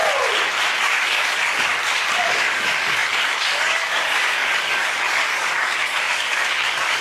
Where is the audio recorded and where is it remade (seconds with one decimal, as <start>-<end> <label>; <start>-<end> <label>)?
0.0-0.8 recorded; 0.8-1.7 remade; 1.7-2.2 recorded; 2.2-7.0 remade